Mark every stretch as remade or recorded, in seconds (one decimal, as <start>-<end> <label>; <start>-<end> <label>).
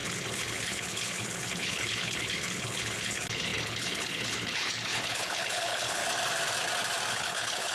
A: 0.0-6.0 remade; 6.0-7.1 recorded; 7.1-7.7 remade